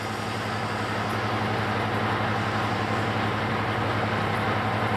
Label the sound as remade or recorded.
recorded